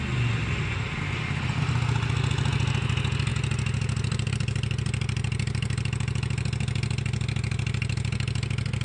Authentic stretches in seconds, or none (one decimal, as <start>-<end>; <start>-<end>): 0.0-8.8